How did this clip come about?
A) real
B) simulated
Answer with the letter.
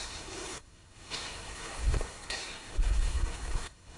B